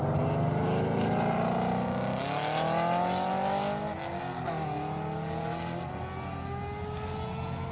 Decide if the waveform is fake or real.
real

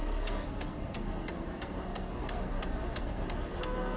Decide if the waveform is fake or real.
fake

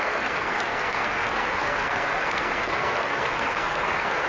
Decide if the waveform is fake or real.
fake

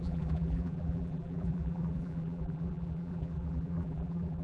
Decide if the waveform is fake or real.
fake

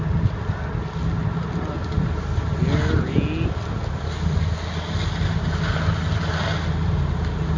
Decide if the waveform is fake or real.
real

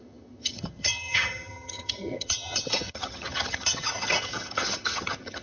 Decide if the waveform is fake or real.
fake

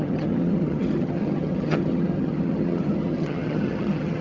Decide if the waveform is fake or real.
fake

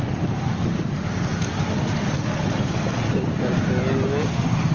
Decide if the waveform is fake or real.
real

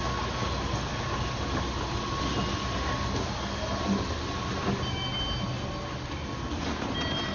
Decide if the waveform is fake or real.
real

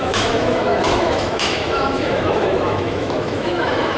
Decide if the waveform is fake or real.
fake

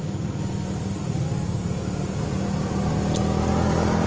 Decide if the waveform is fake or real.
real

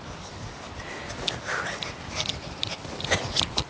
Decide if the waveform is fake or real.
real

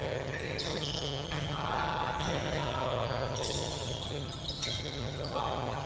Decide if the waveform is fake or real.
fake